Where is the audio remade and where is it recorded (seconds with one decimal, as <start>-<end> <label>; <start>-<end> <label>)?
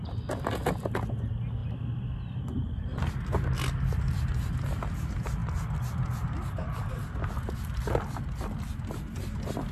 0.0-9.7 recorded